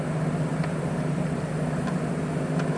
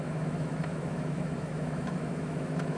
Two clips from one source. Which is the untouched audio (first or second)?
first